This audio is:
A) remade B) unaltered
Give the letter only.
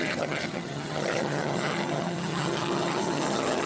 A